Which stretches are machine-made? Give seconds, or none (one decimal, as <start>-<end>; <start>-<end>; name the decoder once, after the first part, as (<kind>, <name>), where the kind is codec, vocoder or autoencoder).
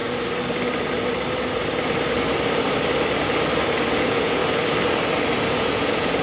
3.7-4.4 (vocoder, Vocos); 5.6-6.2